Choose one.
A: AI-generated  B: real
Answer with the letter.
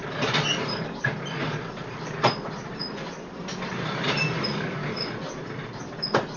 B